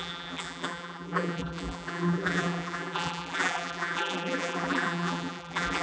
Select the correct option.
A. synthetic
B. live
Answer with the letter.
A